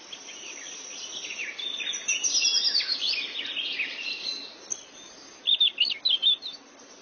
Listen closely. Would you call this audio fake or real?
real